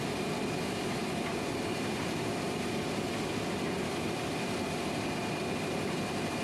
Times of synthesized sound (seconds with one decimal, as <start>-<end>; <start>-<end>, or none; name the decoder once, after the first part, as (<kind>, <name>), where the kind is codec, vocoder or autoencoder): 1.0-4.8 (vocoder, BigVGAN v2)